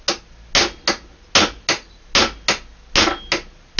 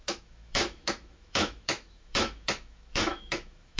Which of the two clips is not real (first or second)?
second